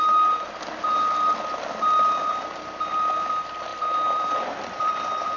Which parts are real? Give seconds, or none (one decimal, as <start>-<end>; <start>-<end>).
0.0-3.7; 4.9-5.4